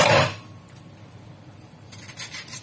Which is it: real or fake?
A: fake